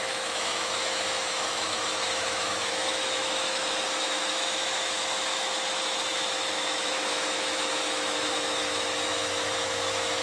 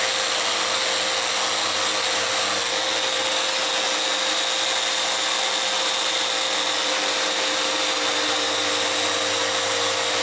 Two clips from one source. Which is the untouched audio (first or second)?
second